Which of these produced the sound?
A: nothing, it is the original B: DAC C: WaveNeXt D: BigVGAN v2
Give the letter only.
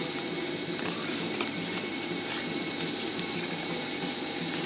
D